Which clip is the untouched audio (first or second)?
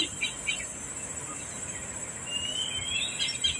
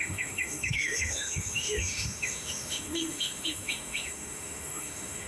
first